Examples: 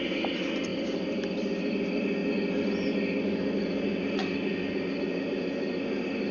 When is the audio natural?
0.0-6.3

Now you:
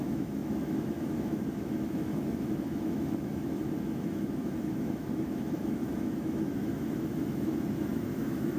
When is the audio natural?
none

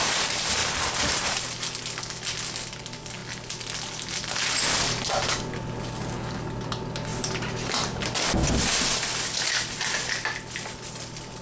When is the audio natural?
0.0-11.4